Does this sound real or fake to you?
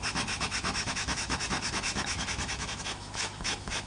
fake